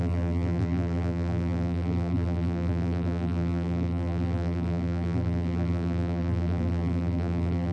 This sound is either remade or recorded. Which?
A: remade